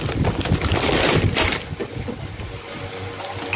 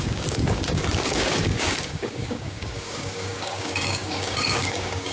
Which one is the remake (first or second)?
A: second